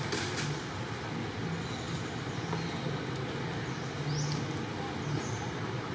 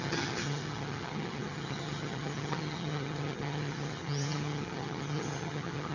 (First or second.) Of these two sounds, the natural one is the first